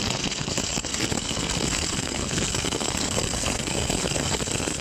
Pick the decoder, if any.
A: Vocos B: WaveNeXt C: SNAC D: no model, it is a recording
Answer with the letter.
C